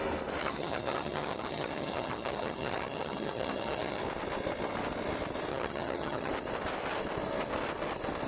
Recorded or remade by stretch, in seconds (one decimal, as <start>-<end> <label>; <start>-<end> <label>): 0.0-0.4 recorded; 0.4-4.0 remade; 4.0-5.5 recorded; 5.5-6.3 remade; 6.3-8.3 recorded